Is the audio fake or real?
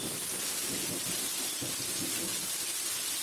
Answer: real